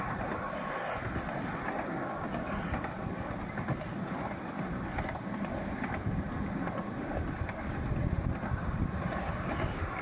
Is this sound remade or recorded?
recorded